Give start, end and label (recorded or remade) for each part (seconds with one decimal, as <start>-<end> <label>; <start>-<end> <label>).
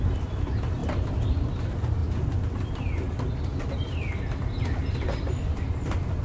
0.0-0.8 recorded; 0.8-1.3 remade; 1.3-6.2 recorded